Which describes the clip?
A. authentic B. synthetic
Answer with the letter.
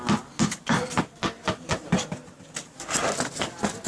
A